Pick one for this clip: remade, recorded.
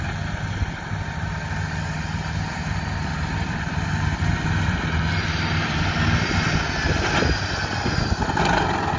recorded